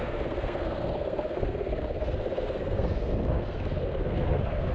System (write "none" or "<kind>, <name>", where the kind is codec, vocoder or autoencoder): codec, SNAC